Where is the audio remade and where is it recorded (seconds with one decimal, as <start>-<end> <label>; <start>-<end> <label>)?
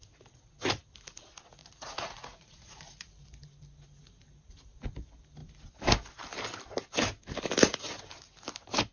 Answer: 0.0-1.6 recorded; 1.6-3.2 remade; 3.2-8.9 recorded